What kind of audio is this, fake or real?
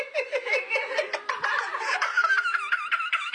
fake